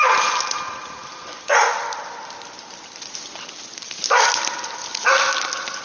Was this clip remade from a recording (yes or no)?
no